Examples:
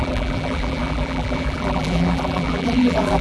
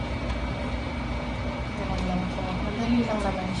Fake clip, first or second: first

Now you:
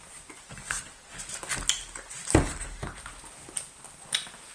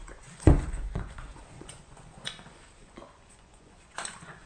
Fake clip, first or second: second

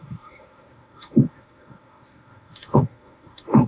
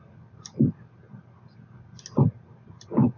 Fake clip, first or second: first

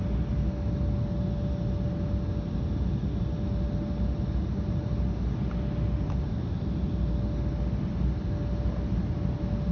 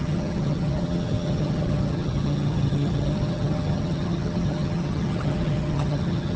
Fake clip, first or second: second